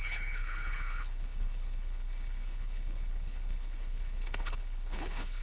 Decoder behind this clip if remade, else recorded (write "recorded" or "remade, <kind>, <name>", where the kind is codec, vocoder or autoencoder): remade, codec, HILCodec